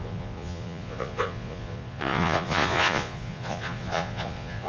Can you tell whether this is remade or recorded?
remade